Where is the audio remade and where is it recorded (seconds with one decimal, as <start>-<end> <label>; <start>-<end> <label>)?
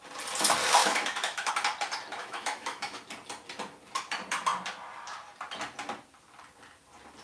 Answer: 0.0-0.8 recorded; 0.8-1.5 remade; 1.5-2.2 recorded; 2.2-3.0 remade; 3.0-7.2 recorded